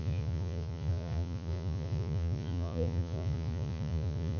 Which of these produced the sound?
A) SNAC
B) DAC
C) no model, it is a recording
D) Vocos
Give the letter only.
D